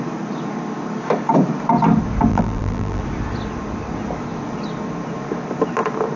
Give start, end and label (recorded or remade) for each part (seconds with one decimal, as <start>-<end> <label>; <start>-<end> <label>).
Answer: 0.0-2.3 recorded; 2.3-3.0 remade; 3.0-6.2 recorded

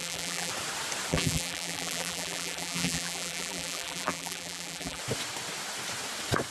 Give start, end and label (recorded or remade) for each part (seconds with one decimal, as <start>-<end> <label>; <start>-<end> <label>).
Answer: 0.0-0.5 remade; 0.5-1.1 recorded; 1.1-5.0 remade; 5.0-6.5 recorded

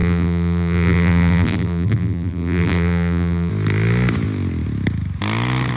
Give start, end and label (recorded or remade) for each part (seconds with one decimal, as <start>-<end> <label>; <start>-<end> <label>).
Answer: 0.0-3.5 remade; 3.5-5.8 recorded

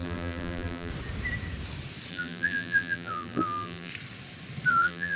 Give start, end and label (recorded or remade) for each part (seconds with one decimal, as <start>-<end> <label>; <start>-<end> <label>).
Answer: 0.0-0.9 remade; 0.9-2.1 recorded; 2.1-3.9 remade; 3.9-4.7 recorded; 4.7-5.2 remade

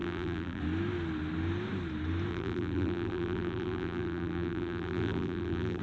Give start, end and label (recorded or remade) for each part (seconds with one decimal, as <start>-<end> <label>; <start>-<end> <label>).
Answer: 0.0-0.6 remade; 0.6-2.3 recorded; 2.3-5.8 remade

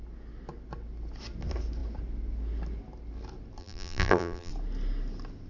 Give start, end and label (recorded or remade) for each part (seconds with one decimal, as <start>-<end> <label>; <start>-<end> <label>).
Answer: 0.0-3.6 recorded; 3.6-4.5 remade; 4.5-5.5 recorded

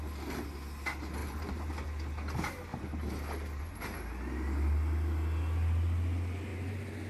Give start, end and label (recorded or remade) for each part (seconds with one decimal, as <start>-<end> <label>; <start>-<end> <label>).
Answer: 0.0-1.2 recorded; 1.2-1.7 remade; 1.7-2.7 recorded; 2.7-3.6 remade; 3.6-6.5 recorded; 6.5-7.1 remade